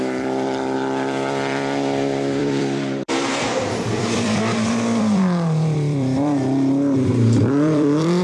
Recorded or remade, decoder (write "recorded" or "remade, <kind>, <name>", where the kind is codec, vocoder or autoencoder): remade, vocoder, BigVGAN v2